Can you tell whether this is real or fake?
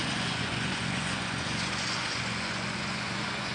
fake